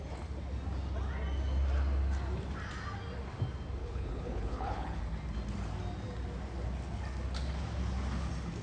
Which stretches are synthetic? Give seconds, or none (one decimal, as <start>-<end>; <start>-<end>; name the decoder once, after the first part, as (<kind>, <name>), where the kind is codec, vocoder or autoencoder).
3.8-5.0 (codec, HILCodec)